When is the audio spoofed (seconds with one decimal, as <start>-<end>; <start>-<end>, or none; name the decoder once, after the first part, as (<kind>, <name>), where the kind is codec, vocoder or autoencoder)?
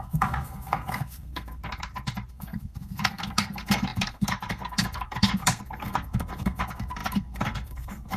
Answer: 0.0-1.6 (codec, SNAC); 2.3-8.2